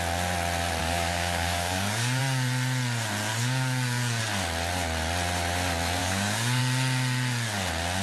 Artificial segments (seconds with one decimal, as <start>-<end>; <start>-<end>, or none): 0.8-2.2; 3.3-4.2; 6.0-6.6